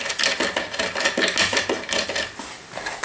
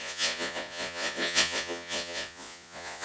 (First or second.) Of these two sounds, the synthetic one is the second